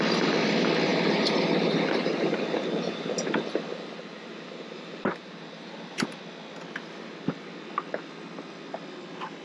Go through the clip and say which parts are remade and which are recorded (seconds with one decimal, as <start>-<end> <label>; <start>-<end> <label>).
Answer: 0.0-0.9 recorded; 0.9-3.3 remade; 3.3-3.7 recorded; 3.7-6.2 remade; 6.2-9.4 recorded